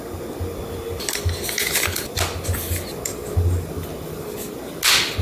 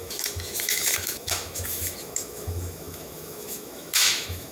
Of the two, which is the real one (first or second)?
first